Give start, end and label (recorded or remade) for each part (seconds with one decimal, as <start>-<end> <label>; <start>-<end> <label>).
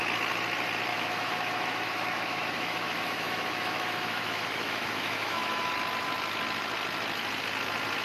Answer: 0.0-0.9 recorded; 0.9-5.7 remade; 5.7-8.0 recorded